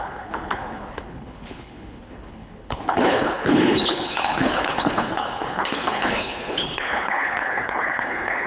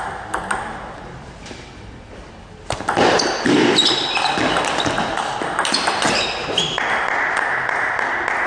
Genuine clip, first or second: second